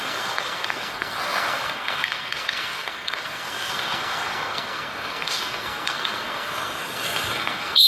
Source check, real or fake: fake